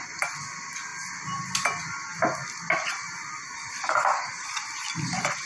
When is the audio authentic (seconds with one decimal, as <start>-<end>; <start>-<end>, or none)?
0.0-5.5